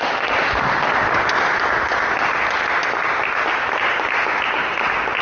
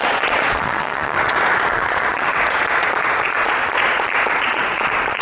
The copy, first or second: second